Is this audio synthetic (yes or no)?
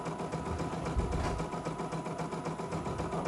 no